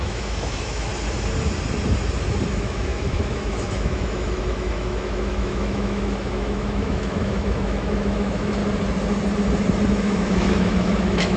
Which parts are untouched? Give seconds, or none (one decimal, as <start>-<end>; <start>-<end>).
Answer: 0.9-2.5; 8.6-9.9